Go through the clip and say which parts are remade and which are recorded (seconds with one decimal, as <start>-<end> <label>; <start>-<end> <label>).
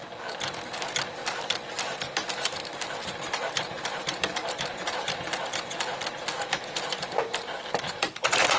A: 0.0-1.2 recorded; 1.2-5.1 remade; 5.1-6.6 recorded; 6.6-8.6 remade